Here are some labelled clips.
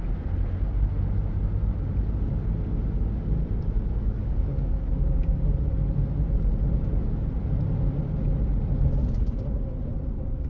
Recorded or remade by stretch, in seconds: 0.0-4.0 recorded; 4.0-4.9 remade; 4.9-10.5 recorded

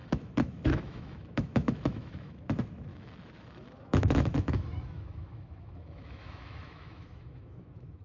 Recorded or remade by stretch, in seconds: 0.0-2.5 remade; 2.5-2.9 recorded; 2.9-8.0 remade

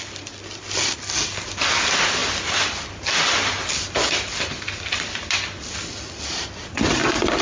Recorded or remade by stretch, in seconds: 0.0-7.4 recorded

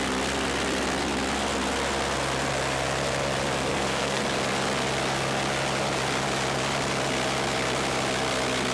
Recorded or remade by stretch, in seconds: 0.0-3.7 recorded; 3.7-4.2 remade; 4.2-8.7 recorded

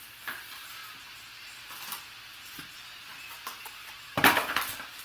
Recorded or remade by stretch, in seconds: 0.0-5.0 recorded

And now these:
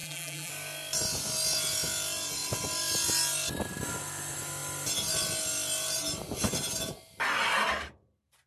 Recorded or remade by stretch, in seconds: 0.0-0.5 remade; 0.5-8.5 recorded